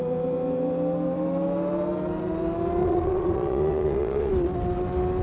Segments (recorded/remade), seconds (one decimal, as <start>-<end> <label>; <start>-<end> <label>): 0.0-2.8 recorded; 2.8-4.3 remade; 4.3-5.2 recorded